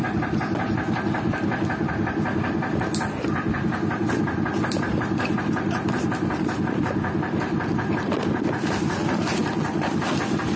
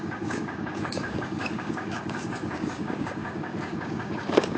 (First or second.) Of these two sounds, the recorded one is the first